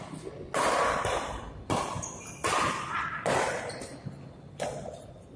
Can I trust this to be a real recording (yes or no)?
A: yes